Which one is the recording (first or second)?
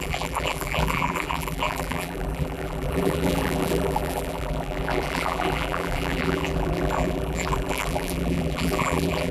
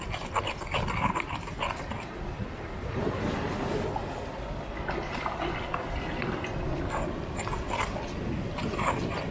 second